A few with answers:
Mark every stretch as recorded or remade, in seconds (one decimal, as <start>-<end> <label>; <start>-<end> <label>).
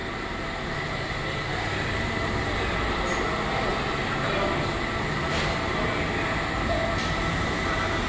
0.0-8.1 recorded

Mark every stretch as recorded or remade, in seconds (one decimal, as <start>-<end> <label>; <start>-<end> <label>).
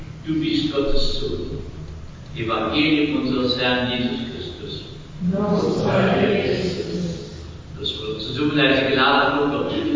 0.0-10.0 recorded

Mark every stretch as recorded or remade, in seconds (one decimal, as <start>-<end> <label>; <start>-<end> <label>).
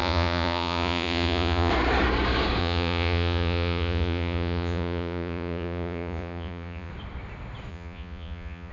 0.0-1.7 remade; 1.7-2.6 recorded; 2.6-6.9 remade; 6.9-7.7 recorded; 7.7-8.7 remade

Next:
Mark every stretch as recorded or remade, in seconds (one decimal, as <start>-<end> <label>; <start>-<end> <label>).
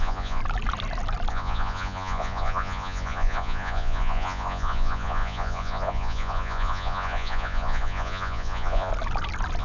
0.0-0.4 remade; 0.4-1.3 recorded; 1.3-8.9 remade; 8.9-9.6 recorded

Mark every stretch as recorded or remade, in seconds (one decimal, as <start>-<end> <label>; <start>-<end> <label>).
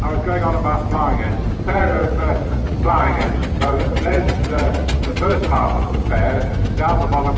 0.0-1.7 recorded; 1.7-6.1 remade; 6.1-7.4 recorded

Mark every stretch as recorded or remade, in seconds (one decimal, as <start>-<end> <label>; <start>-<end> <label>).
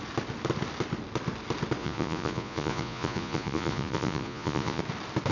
0.0-1.8 recorded; 1.8-4.8 remade; 4.8-5.3 recorded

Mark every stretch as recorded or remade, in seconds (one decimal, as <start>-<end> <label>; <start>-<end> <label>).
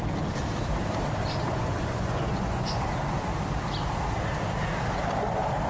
0.0-1.4 recorded; 1.4-2.8 remade; 2.8-5.7 recorded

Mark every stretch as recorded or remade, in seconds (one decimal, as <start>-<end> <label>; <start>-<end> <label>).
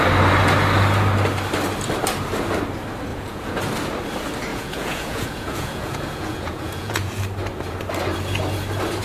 0.0-3.1 recorded; 3.1-3.6 remade; 3.6-4.5 recorded; 4.5-7.2 remade; 7.2-9.0 recorded